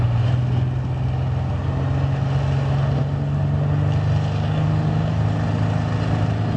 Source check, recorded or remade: recorded